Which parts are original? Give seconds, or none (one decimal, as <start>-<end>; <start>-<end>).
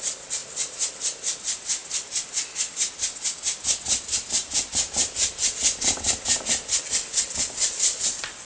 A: 0.4-1.4; 1.8-6.8